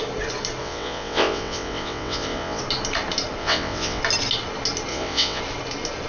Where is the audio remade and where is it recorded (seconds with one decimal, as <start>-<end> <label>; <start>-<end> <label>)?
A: 0.0-0.6 recorded; 0.6-2.6 remade; 2.6-3.4 recorded; 3.4-4.0 remade; 4.0-4.9 recorded; 4.9-5.4 remade; 5.4-6.1 recorded